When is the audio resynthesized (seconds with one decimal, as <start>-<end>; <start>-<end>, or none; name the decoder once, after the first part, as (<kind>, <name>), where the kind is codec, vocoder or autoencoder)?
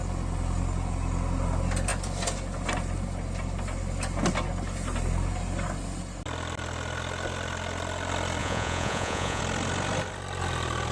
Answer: 8.4-9.4 (vocoder, Vocos)